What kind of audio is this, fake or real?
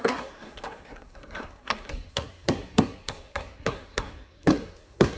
fake